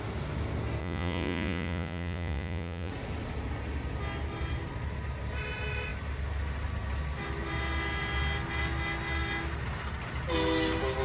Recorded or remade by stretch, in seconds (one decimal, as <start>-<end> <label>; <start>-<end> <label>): 0.0-0.8 recorded; 0.8-2.9 remade; 2.9-11.0 recorded